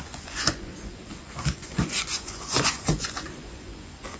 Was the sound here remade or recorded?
remade